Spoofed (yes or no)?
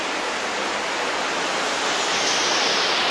no